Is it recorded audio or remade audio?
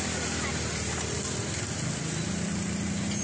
recorded